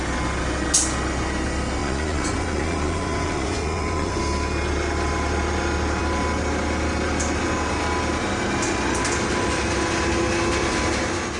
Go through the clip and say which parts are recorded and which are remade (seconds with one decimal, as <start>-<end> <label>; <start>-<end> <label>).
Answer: 0.0-1.8 recorded; 1.8-4.2 remade; 4.2-11.4 recorded